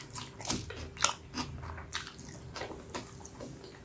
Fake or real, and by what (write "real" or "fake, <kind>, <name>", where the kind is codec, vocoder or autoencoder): real